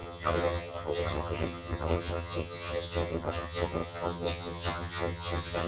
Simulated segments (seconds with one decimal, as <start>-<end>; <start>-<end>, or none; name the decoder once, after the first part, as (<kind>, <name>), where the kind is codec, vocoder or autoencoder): 0.0-5.7 (vocoder, HiFi-GAN)